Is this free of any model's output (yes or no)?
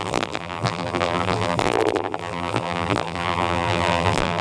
no